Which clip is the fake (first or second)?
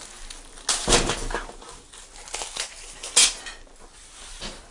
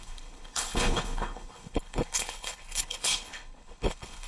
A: second